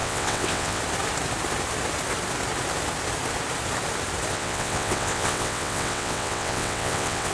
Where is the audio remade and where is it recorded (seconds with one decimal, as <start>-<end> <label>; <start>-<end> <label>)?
0.0-0.8 remade; 0.8-4.3 recorded; 4.3-7.3 remade